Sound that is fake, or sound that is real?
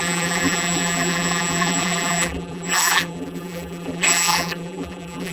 fake